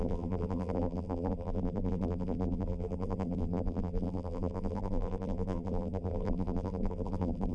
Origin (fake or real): fake